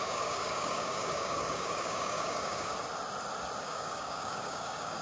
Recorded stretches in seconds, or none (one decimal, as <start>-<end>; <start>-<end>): 2.7-3.6